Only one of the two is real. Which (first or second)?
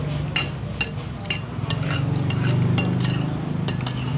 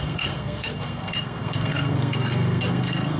first